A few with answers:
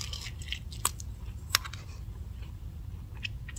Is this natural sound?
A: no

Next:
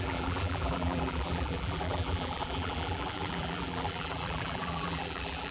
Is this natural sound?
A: no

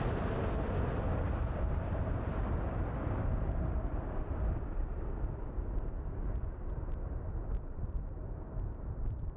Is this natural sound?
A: no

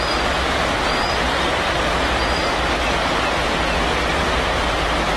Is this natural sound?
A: yes